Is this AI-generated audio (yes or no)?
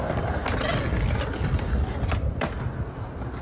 no